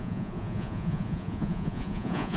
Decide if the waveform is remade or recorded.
remade